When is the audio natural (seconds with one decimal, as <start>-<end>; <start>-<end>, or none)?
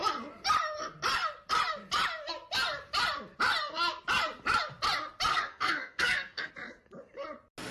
0.0-5.3; 6.5-7.7